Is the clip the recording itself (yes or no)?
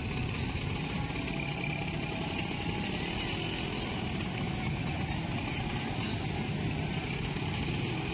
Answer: yes